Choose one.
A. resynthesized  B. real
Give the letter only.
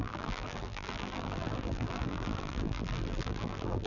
A